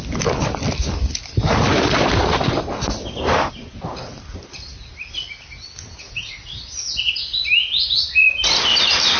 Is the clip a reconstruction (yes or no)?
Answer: no